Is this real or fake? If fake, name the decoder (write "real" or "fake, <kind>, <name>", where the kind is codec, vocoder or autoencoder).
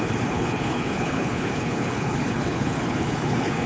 fake, codec, HILCodec